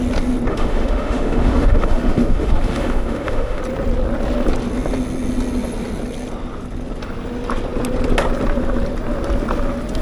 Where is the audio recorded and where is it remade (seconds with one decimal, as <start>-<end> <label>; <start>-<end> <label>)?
0.0-0.5 recorded; 0.5-3.6 remade; 3.6-10.0 recorded